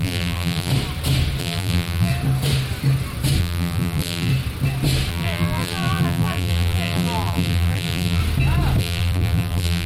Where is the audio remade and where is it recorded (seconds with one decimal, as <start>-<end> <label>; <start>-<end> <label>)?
0.0-0.7 remade; 0.7-1.4 recorded; 1.4-2.1 remade; 2.1-3.4 recorded; 3.4-4.3 remade; 4.3-5.1 recorded; 5.1-8.2 remade; 8.2-8.8 recorded; 8.8-9.9 remade